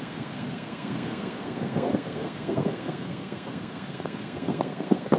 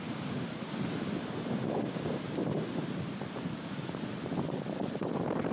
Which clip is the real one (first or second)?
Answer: second